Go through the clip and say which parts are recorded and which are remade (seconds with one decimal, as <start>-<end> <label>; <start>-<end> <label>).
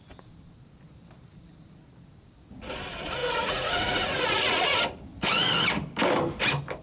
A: 0.0-3.2 recorded; 3.2-4.8 remade; 4.8-6.8 recorded